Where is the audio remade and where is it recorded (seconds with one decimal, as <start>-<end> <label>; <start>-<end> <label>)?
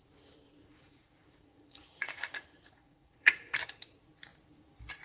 0.0-0.6 recorded; 0.6-3.6 remade; 3.6-5.0 recorded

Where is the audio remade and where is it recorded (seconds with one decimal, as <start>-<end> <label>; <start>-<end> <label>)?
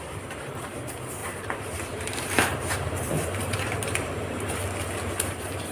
0.0-1.2 recorded; 1.2-4.6 remade; 4.6-5.7 recorded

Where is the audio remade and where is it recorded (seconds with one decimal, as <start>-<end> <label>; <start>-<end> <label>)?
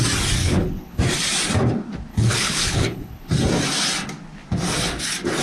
0.0-0.4 recorded; 0.4-1.0 remade; 1.0-2.1 recorded; 2.1-3.3 remade; 3.3-5.4 recorded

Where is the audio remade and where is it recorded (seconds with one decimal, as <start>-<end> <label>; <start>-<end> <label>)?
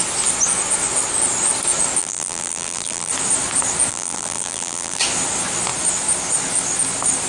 0.0-2.0 recorded; 2.0-3.1 remade; 3.1-3.9 recorded; 3.9-5.0 remade; 5.0-7.3 recorded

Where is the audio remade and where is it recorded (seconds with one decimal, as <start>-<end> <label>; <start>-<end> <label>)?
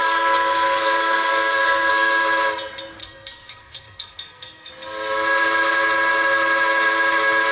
0.0-2.2 remade; 2.2-3.0 recorded; 3.0-4.7 remade; 4.7-7.5 recorded